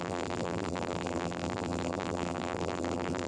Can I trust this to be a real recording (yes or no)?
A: no